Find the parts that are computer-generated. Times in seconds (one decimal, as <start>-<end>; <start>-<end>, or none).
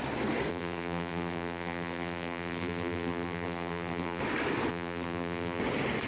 0.5-4.2; 4.7-5.6